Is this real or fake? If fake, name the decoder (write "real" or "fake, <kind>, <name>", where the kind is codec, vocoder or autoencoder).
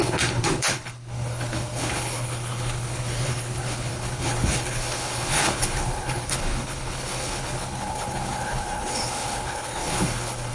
fake, codec, HILCodec